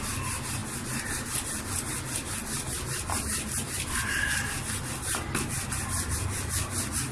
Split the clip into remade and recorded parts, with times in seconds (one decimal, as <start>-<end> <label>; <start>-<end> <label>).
0.0-7.1 recorded